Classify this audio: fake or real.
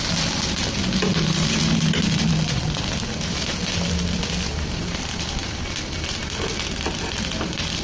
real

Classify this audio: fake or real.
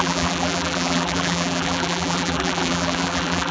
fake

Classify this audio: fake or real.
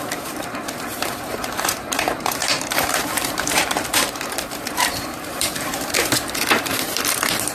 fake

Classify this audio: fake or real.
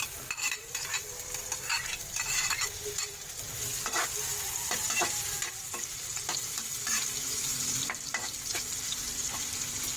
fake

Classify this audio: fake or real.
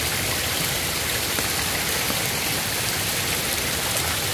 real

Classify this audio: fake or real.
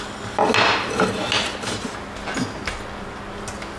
real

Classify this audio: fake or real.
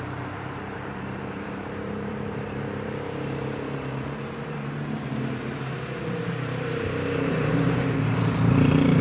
fake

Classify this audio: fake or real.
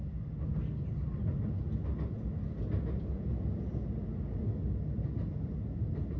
real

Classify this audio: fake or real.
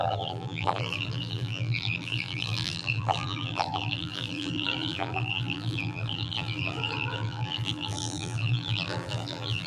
fake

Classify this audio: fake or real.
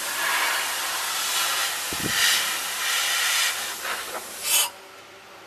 real